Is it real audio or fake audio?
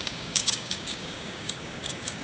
fake